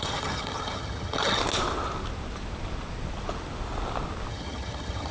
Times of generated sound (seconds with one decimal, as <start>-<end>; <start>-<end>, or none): 0.0-1.4; 4.3-5.1